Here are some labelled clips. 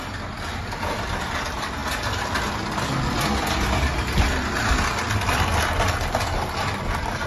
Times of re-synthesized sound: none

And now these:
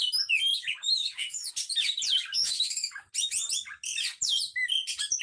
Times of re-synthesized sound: 0.5-1.5 (autoencoder, DAC-VAE); 2.3-3.1

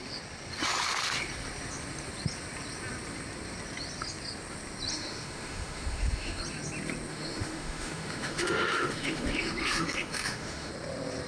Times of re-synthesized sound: 4.9-6.4 (autoencoder, DAC-VAE); 7.1-10.7

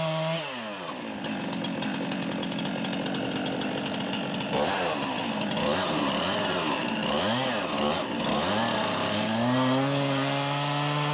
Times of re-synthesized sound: none

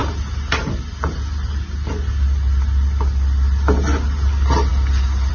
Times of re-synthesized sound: none

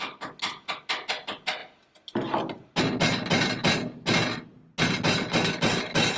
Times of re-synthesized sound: none

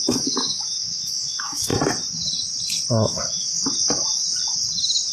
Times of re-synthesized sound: 0.0-1.7 (autoencoder, DAC-VAE); 2.9-3.6